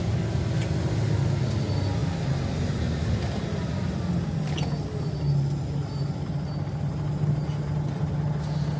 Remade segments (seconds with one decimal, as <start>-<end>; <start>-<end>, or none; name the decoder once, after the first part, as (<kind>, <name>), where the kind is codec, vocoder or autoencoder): none